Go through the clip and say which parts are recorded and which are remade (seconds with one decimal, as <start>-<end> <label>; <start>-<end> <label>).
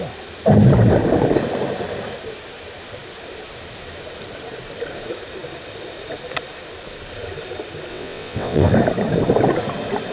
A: 0.0-7.9 recorded; 7.9-8.7 remade; 8.7-10.1 recorded